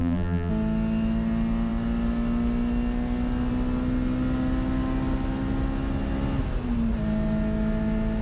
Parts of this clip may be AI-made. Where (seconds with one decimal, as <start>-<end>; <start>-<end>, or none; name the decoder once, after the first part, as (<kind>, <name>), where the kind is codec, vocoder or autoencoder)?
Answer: 0.0-0.5 (vocoder, BigVGAN v2)